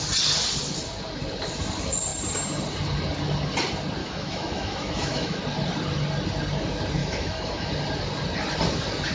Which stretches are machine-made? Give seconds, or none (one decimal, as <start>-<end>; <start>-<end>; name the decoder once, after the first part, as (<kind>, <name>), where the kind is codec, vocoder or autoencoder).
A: 4.0-5.4 (autoencoder, DAC-VAE); 7.0-7.7